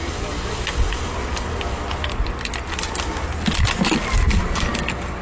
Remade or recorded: recorded